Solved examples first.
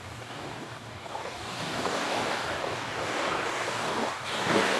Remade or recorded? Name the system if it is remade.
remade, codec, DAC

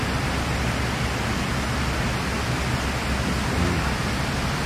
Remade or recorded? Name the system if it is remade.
recorded